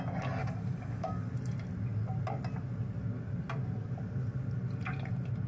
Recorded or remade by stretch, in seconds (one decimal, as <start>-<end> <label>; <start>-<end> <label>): 0.0-0.4 recorded; 0.4-1.3 remade; 1.3-5.5 recorded